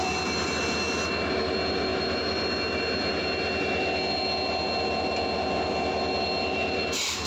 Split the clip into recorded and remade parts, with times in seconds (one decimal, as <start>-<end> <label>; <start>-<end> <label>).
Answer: 0.0-7.3 recorded